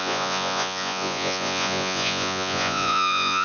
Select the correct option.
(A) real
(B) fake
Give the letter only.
B